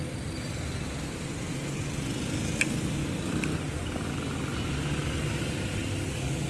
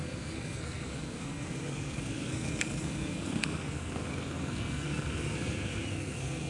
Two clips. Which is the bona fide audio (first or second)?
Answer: first